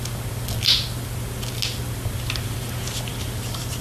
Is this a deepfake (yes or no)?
no